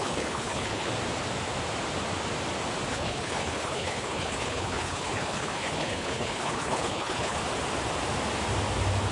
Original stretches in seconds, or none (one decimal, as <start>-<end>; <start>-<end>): 0.9-2.9; 7.4-9.1